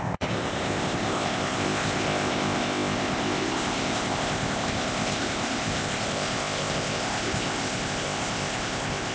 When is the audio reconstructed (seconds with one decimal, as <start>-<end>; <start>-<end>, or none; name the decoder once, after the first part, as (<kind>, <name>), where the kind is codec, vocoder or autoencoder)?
0.0-9.1 (codec, ZipCodec)